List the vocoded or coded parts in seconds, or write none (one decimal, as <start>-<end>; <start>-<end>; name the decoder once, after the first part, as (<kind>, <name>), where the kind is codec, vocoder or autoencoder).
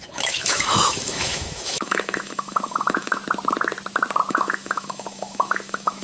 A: 0.0-3.2 (autoencoder, DAC-VAE); 4.3-6.0